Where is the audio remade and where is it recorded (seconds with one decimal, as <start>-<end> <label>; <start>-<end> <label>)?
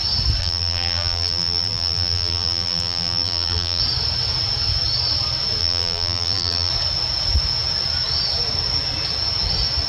0.0-0.4 recorded; 0.4-3.8 remade; 3.8-5.6 recorded; 5.6-6.7 remade; 6.7-9.9 recorded